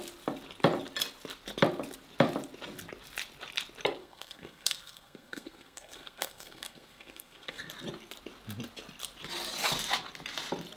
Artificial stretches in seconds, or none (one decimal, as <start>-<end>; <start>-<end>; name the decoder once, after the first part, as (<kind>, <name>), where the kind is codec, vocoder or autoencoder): 4.0-7.7 (codec, SNAC)